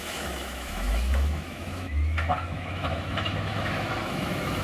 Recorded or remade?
remade